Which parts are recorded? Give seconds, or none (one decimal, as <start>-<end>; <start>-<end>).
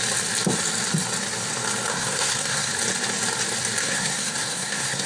0.0-1.9; 2.7-3.8